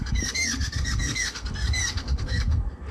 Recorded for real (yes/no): no